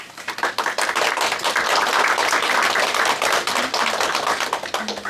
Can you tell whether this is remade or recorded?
recorded